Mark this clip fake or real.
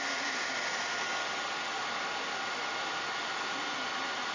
real